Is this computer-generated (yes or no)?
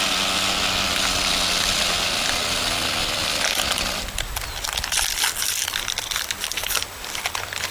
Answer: no